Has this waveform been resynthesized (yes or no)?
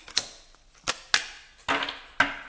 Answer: no